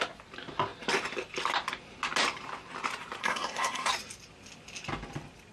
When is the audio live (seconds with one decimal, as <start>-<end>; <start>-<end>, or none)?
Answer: 0.0-3.2; 3.9-5.5

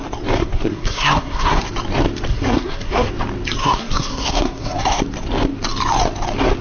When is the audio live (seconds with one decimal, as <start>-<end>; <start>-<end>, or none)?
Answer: 0.0-0.4; 1.6-2.3; 3.1-3.6; 5.0-6.6

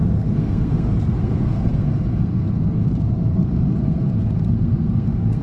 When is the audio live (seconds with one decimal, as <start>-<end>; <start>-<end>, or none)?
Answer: none

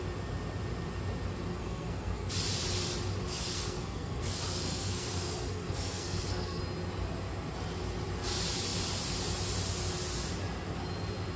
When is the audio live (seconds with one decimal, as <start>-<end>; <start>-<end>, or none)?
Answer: 0.0-1.5; 2.3-3.3; 6.6-11.4

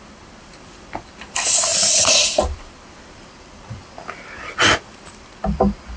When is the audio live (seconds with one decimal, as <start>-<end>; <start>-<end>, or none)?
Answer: 0.0-6.0